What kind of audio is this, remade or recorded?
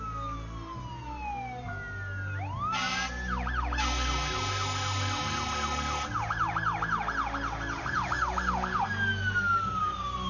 recorded